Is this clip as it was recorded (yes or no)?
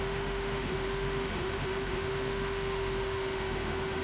no